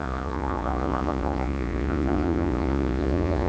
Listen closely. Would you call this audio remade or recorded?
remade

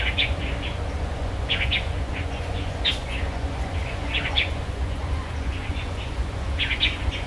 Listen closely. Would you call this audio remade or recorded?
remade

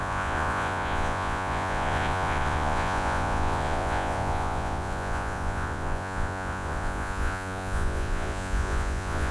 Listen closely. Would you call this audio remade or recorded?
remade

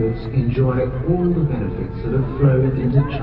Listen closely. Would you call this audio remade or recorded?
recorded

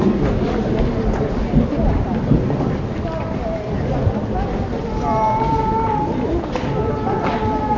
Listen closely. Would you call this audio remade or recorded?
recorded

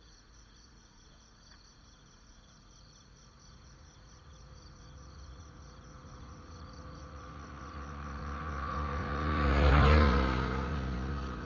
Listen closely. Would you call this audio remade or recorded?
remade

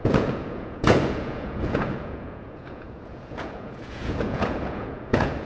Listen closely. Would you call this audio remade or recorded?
remade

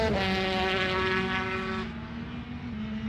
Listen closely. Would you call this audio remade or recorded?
recorded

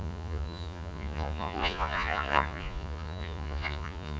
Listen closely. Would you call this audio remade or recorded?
remade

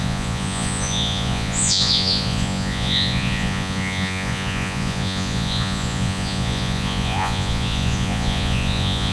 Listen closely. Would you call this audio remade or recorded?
remade